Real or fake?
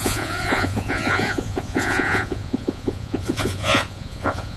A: fake